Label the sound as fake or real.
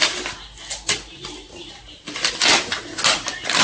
real